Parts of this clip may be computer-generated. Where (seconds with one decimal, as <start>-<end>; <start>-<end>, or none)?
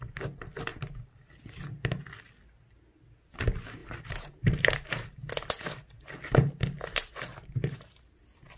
0.7-1.3; 3.8-4.5; 7.3-8.2